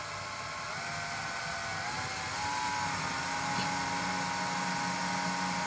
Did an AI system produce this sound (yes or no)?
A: no